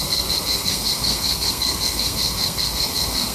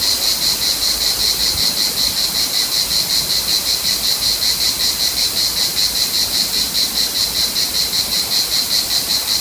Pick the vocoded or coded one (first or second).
first